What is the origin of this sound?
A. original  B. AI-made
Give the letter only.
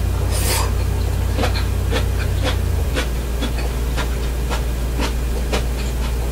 A